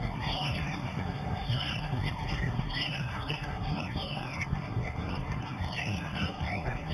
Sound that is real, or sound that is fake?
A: fake